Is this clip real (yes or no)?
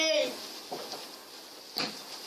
yes